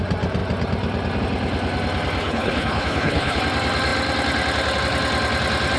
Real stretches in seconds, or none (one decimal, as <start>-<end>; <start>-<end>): 0.0-2.2; 3.4-5.8